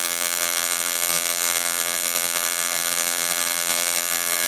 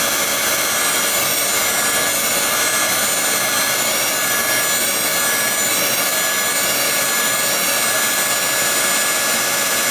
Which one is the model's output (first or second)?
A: first